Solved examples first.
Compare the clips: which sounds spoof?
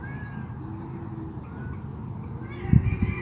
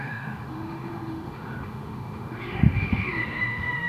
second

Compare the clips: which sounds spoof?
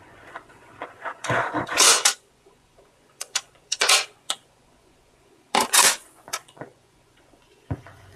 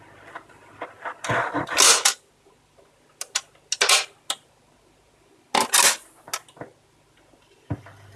first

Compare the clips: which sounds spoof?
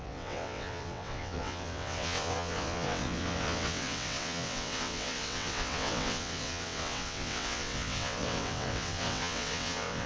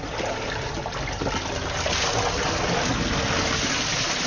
first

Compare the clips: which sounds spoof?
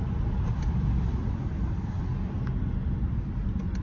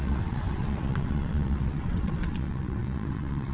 second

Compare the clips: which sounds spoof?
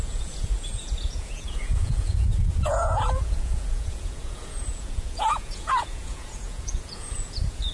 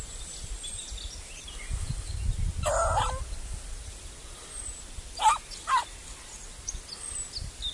first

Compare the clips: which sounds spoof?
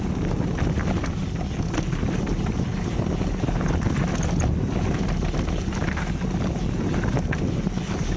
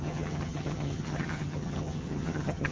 second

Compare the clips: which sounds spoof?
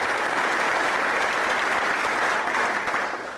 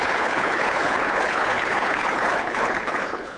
second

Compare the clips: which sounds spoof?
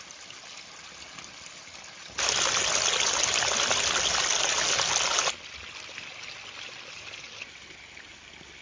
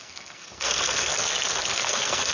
second